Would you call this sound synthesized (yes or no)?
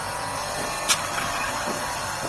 no